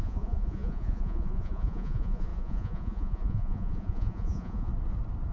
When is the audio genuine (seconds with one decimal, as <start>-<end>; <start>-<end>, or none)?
4.7-5.3